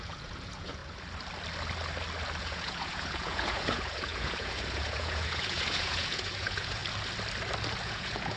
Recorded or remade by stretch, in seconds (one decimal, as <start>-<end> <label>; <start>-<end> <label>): 0.0-0.8 remade; 0.8-2.4 recorded; 2.4-6.8 remade; 6.8-7.8 recorded; 7.8-8.4 remade